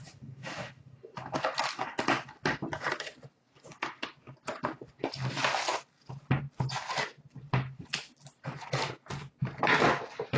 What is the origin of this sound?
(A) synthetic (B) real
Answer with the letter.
B